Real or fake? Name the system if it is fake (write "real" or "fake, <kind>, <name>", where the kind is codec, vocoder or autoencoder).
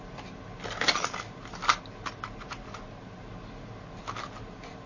real